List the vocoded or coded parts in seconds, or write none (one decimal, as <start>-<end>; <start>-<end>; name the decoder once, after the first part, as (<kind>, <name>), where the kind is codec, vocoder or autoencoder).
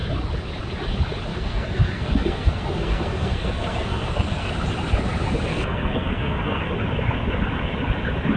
1.3-4.5 (codec, SNAC); 5.5-6.7